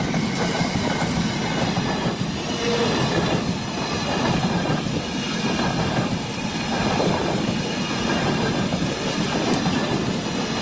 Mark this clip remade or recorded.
recorded